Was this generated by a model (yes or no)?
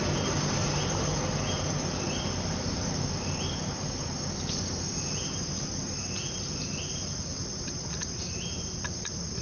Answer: no